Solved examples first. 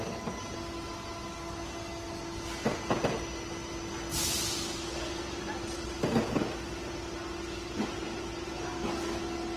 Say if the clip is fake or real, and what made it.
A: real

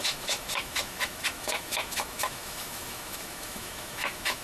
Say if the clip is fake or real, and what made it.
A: fake, autoencoder, DAC-VAE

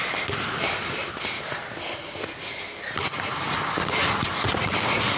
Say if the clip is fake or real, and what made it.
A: real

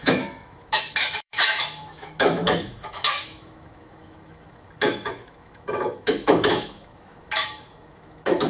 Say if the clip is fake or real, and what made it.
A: fake, autoencoder, DAC-VAE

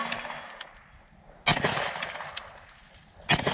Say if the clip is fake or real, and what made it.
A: real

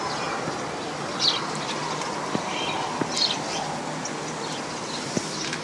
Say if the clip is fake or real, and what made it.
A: real